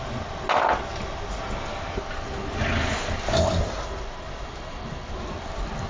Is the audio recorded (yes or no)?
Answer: yes